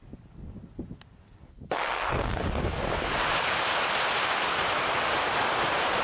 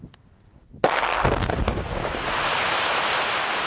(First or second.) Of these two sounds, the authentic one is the second